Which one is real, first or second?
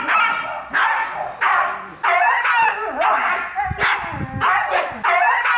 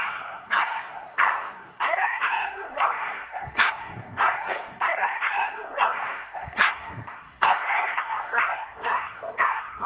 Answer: first